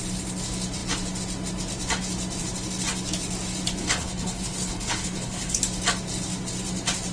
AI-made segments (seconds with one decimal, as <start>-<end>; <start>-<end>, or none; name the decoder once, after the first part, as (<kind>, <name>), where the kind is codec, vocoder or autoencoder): 3.8-5.6 (codec, HILCodec)